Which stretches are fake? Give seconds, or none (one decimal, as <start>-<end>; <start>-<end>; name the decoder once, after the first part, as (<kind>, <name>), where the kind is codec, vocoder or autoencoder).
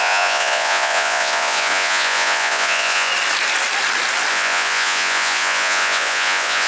0.0-3.1 (vocoder, Vocos); 4.3-6.7